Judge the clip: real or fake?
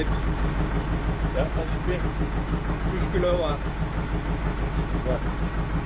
real